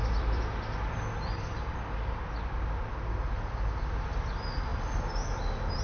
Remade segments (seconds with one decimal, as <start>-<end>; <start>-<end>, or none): 0.0-2.8